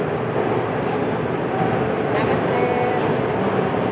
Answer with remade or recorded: recorded